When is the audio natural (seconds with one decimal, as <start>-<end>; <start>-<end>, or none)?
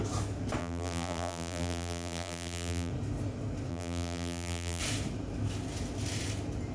0.0-0.6; 2.9-3.7; 4.8-6.7